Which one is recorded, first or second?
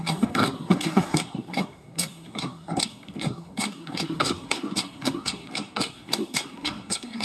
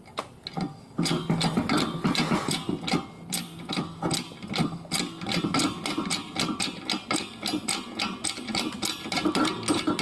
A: second